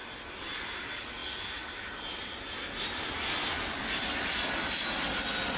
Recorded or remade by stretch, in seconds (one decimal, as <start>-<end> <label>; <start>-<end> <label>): 0.0-5.6 recorded